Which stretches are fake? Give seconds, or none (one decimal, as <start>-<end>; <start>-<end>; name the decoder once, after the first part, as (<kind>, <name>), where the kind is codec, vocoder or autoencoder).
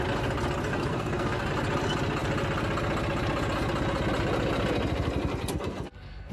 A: 0.7-1.5 (codec, SNAC); 5.5-6.3